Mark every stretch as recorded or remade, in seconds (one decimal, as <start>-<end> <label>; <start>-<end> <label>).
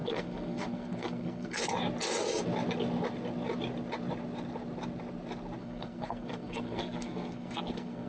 0.0-1.6 remade; 1.6-5.6 recorded; 5.6-8.1 remade